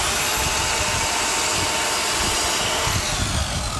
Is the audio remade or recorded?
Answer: recorded